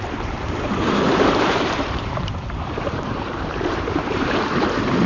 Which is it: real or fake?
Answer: fake